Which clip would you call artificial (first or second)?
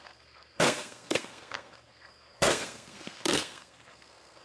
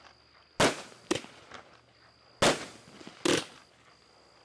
first